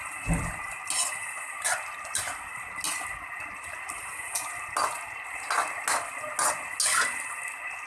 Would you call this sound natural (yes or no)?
yes